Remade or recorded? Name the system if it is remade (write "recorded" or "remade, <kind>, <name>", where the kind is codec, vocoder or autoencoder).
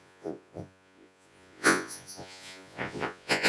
remade, vocoder, Vocos